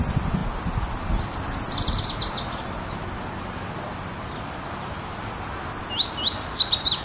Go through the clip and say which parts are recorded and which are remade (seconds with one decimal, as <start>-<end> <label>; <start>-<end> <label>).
0.0-7.0 recorded